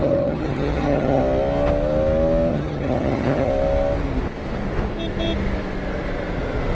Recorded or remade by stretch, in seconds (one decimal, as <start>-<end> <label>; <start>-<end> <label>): 0.0-1.2 remade; 1.2-2.5 recorded; 2.5-3.5 remade; 3.5-6.7 recorded